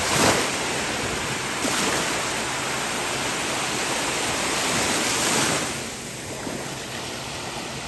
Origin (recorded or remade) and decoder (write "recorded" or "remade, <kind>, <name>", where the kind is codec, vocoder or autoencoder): recorded